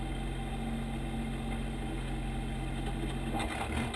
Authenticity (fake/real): real